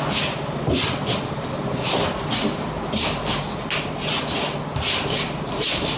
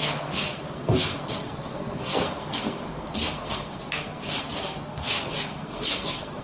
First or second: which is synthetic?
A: second